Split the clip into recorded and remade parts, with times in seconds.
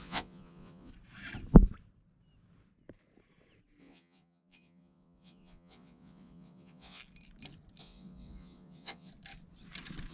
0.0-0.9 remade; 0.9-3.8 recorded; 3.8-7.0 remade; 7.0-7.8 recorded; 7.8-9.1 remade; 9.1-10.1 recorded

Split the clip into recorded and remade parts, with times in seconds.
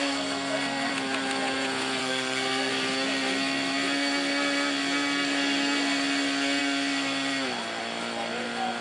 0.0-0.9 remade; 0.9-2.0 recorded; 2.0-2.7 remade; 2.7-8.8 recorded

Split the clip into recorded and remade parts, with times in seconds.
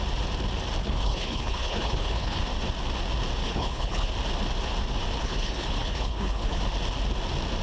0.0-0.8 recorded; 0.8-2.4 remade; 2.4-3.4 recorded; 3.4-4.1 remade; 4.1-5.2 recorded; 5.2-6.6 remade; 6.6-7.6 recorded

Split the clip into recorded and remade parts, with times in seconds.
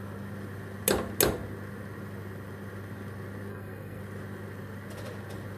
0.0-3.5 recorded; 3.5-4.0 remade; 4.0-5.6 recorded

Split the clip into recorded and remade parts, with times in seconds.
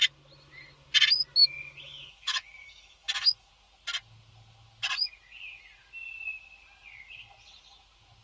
0.0-1.4 recorded; 1.4-3.5 remade; 3.5-8.2 recorded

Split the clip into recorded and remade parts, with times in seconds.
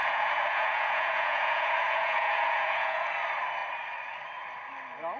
0.0-3.1 remade; 3.1-5.2 recorded